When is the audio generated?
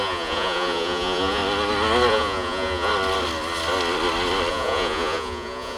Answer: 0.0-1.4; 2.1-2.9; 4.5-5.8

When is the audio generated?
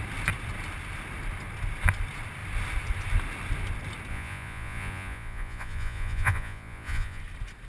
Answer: 4.1-7.2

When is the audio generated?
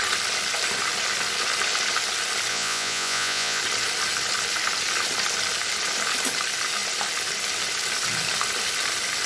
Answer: 2.5-3.6